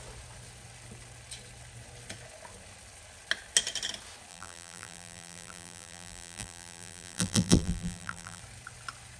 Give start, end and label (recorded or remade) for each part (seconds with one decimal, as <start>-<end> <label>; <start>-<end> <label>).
0.0-4.3 recorded; 4.3-8.4 remade; 8.4-9.2 recorded